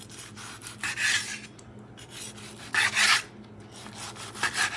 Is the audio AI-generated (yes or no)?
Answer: no